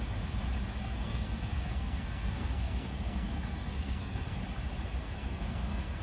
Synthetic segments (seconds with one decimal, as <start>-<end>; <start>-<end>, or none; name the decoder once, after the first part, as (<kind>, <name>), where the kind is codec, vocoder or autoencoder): 0.8-4.4 (codec, SNAC); 5.0-6.0